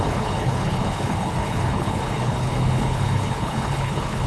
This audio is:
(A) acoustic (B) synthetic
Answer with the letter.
B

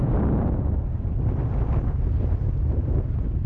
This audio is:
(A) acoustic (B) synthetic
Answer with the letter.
A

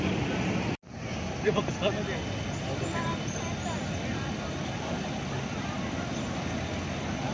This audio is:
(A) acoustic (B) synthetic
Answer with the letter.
A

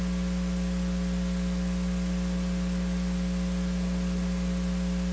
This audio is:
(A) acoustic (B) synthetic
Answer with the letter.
A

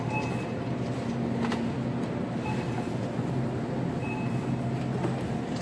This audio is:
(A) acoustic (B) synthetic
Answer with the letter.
A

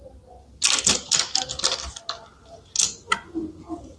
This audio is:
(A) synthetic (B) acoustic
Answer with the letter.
B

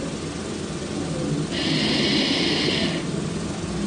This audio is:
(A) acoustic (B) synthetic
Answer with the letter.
A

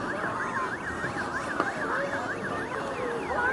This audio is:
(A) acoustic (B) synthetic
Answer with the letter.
A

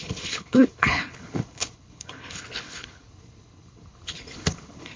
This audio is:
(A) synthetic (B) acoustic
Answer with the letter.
A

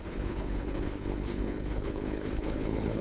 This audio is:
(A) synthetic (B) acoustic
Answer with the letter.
A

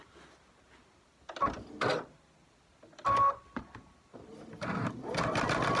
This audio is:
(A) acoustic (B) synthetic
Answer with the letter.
A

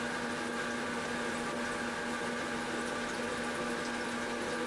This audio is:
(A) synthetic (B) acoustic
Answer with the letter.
B